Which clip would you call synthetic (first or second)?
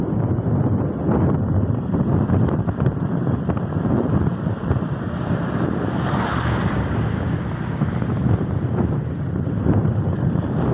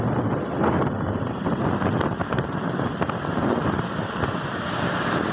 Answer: first